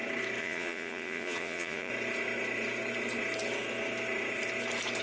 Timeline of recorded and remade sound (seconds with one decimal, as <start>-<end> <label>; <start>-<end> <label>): 0.0-0.4 recorded; 0.4-1.9 remade; 1.9-5.0 recorded